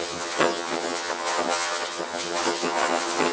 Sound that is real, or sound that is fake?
fake